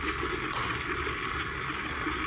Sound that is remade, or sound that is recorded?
recorded